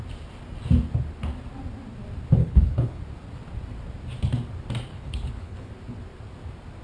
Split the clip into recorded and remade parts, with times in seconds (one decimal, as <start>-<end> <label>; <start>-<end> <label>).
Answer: 0.0-2.4 recorded; 2.4-3.0 remade; 3.0-4.9 recorded; 4.9-5.7 remade; 5.7-6.8 recorded